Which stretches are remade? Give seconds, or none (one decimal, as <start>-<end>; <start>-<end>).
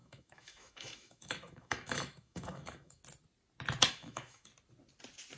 0.0-3.0; 3.9-4.5